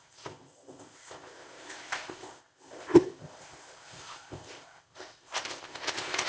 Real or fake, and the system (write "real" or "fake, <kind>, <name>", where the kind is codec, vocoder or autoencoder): fake, codec, ZipCodec